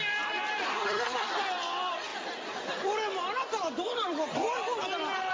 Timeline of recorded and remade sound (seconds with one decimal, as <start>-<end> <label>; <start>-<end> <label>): 0.0-0.7 recorded; 0.7-1.3 remade; 1.3-5.3 recorded